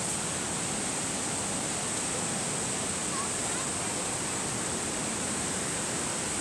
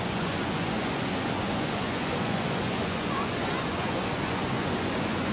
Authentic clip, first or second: first